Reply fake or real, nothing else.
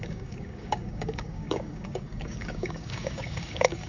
fake